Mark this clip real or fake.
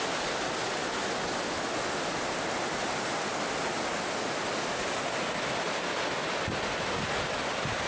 real